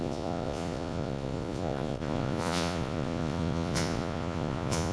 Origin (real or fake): fake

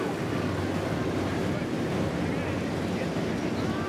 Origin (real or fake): real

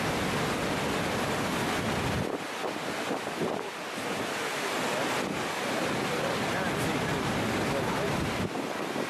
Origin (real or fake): real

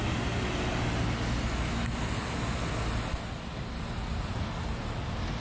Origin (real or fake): real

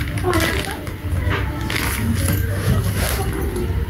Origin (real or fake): real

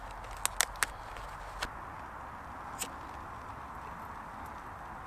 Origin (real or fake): real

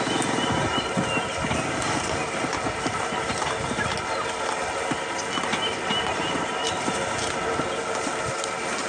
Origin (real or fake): real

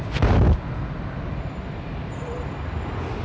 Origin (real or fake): real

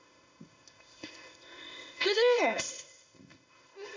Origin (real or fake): fake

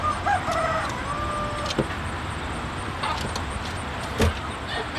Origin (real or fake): real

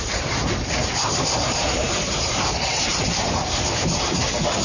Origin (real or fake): fake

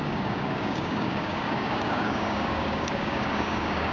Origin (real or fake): fake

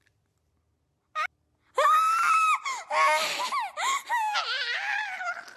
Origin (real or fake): real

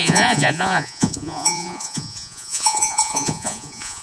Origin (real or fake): fake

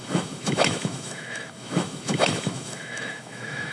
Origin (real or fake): fake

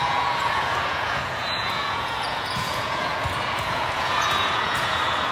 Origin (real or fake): fake